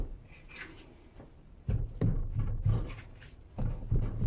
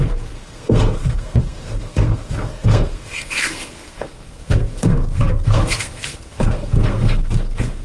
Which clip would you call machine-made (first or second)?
second